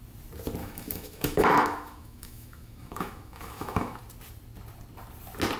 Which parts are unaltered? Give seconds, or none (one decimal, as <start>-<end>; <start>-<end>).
0.0-0.6; 4.0-5.6